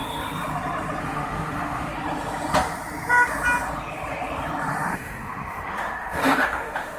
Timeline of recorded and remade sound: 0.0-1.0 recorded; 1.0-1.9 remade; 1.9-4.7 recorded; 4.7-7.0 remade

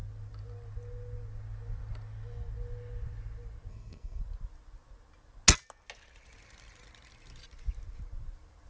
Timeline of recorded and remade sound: 0.0-3.7 recorded; 3.7-4.2 remade; 4.2-8.7 recorded